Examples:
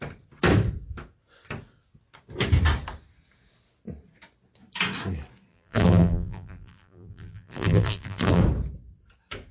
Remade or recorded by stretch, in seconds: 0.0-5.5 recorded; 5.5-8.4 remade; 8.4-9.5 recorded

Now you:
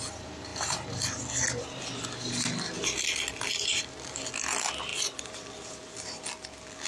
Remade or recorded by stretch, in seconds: 0.0-6.9 recorded